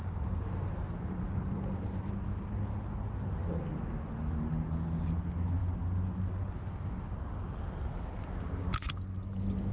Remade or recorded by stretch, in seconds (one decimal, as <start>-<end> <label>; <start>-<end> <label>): 0.0-2.1 remade; 2.1-9.7 recorded